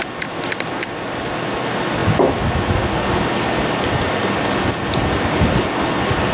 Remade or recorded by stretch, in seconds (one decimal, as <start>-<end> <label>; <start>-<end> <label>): 0.0-6.3 recorded